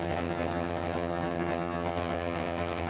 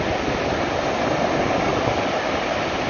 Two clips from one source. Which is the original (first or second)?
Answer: second